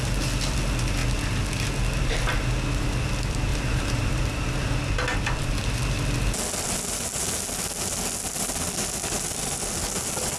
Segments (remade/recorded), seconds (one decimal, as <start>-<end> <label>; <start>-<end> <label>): 0.0-3.5 recorded; 3.5-4.1 remade; 4.1-10.4 recorded